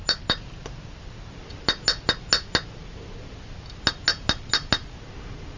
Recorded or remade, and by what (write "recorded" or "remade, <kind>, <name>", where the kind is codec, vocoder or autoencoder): recorded